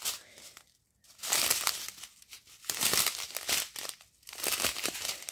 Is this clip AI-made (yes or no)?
no